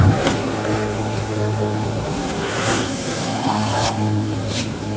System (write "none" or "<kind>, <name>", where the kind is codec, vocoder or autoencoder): codec, SNAC